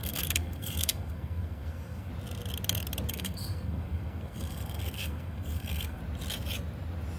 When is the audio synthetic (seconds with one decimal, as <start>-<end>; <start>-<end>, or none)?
0.0-2.1; 3.1-6.0